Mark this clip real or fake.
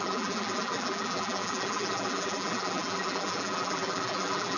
fake